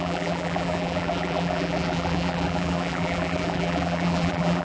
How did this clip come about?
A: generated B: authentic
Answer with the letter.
A